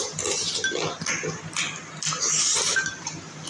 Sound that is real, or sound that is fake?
real